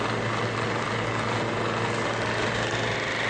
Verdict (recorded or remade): recorded